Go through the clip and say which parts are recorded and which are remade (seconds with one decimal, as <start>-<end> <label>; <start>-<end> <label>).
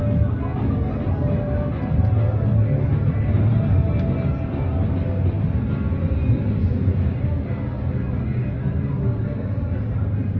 0.0-10.4 recorded